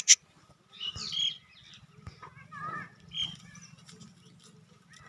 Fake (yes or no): no